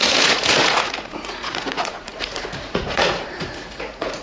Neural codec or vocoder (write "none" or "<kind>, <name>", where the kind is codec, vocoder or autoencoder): vocoder, Vocos